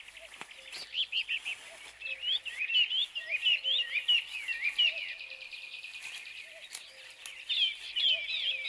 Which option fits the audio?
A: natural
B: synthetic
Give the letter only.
A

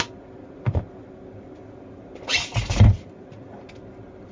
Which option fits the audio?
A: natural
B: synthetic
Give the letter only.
A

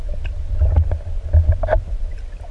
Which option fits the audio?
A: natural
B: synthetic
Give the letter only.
A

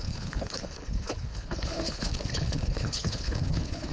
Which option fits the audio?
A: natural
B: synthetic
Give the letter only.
B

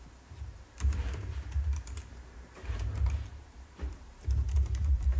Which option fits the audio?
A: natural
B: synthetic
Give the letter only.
B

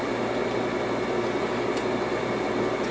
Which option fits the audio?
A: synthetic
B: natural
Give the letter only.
B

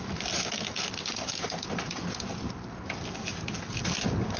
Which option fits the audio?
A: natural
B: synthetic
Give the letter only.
A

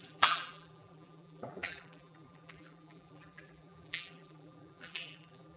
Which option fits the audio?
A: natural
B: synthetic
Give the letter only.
B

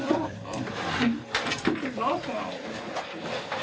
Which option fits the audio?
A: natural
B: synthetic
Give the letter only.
B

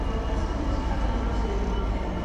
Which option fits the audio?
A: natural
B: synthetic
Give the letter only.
B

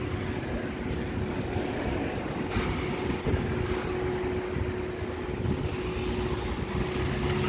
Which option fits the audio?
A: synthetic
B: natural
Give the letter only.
B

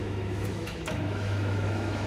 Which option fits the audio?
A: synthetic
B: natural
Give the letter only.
A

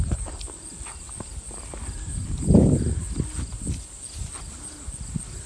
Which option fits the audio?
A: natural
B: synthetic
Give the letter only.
A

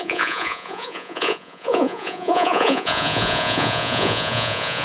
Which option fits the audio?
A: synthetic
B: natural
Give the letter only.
A